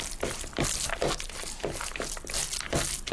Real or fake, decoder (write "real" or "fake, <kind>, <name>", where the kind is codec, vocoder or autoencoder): real